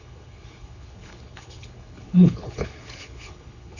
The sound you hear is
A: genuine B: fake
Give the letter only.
B